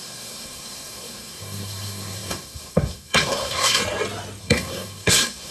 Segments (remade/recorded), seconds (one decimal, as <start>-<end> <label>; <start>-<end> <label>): 0.0-3.8 remade; 3.8-4.4 recorded; 4.4-5.5 remade